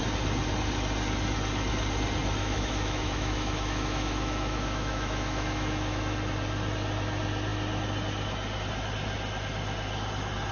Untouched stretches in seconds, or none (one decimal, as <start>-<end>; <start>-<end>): 0.0-2.4; 6.0-10.5